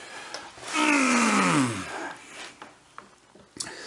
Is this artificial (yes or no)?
no